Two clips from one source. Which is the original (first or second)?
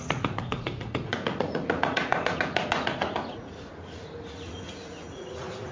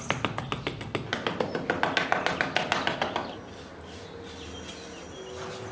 second